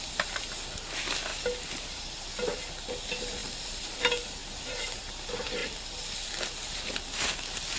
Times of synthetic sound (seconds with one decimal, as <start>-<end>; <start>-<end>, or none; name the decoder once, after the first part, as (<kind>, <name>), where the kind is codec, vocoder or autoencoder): 1.3-2.2 (vocoder, BigVGAN v2); 3.4-4.0; 4.4-5.0; 5.6-6.8